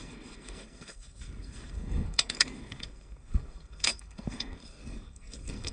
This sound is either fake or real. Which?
fake